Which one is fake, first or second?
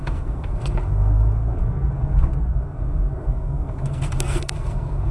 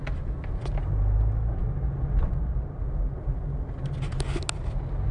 first